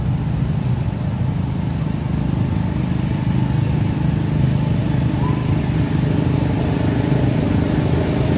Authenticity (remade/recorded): recorded